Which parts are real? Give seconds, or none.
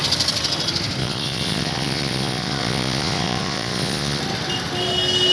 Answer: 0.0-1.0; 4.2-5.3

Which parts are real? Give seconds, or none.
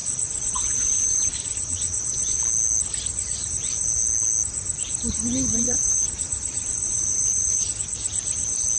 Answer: 2.4-5.5; 7.7-8.8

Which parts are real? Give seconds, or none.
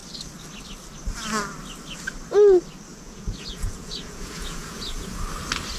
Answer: 0.0-2.9; 5.1-5.8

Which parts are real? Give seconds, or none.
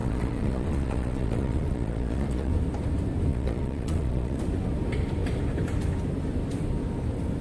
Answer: 2.5-3.3; 4.4-7.4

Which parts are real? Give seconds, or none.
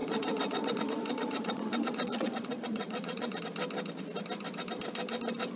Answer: 3.4-5.6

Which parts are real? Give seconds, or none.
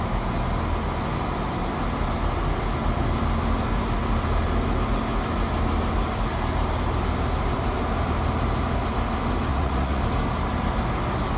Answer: 0.0-9.5; 10.0-11.4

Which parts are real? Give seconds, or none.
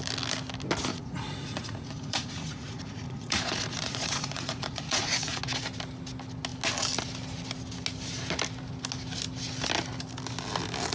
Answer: 0.0-0.9; 5.4-10.9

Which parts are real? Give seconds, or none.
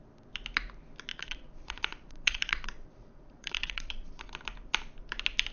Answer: 0.0-1.1; 4.3-5.5